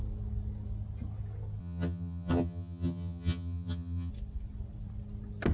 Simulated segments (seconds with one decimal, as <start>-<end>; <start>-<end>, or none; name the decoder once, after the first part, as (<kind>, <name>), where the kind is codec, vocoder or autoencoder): 1.6-4.1 (vocoder, HiFi-GAN)